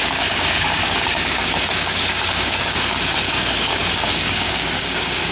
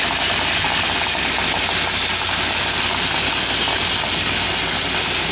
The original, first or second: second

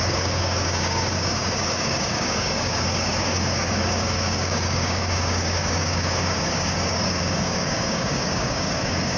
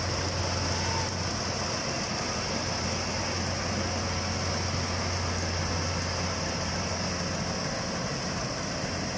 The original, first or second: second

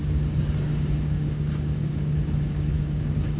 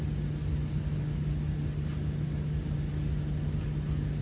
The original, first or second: second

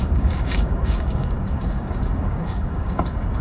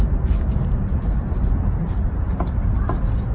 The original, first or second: second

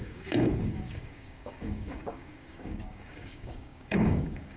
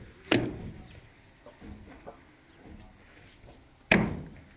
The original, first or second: second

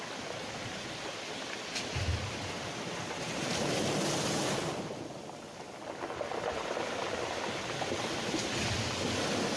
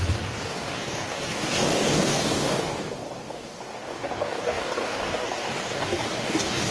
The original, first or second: first